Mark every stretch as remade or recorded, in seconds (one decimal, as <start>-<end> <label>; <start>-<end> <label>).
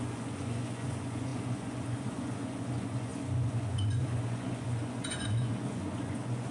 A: 0.0-6.5 remade